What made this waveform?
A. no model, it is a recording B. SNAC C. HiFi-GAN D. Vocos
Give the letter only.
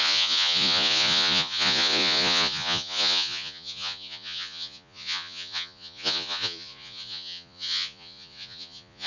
D